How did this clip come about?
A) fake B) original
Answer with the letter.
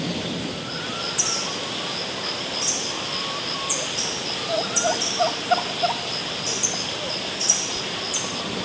B